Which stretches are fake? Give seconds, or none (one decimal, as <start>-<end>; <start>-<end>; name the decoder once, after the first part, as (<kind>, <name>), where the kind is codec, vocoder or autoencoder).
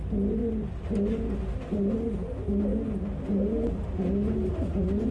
none